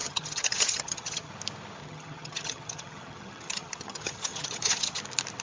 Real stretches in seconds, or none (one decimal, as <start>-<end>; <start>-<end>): 1.3-1.8; 5.0-5.4